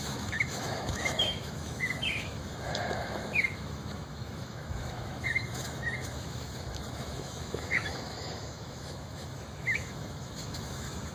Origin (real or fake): fake